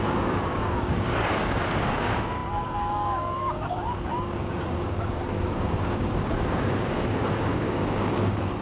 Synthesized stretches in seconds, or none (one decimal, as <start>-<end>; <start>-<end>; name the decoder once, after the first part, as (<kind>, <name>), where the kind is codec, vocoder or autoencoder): 0.0-8.6 (codec, DAC)